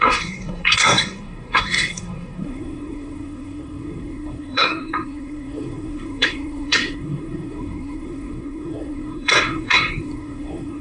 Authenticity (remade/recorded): remade